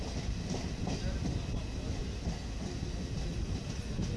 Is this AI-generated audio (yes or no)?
no